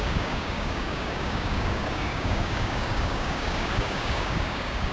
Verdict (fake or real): fake